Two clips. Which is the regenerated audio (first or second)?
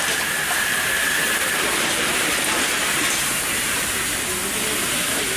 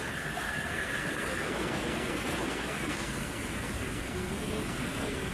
second